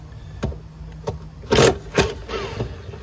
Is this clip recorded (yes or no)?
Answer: yes